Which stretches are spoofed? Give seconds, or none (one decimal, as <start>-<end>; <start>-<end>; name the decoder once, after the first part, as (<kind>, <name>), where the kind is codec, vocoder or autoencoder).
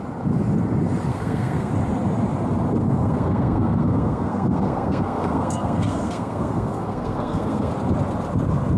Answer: 1.1-1.7 (codec, SNAC); 2.8-7.7